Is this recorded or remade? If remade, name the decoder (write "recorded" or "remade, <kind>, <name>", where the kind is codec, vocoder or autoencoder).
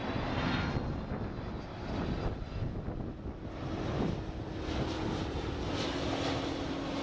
recorded